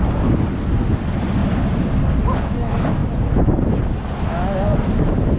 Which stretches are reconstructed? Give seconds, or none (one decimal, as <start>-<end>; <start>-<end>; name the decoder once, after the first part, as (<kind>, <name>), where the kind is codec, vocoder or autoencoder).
1.4-2.0 (vocoder, BigVGAN v2); 3.0-3.8; 4.7-5.4